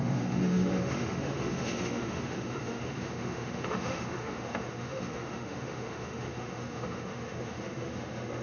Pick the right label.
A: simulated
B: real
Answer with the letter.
A